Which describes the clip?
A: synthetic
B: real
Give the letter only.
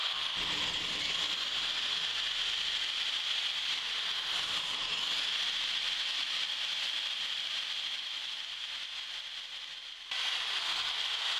B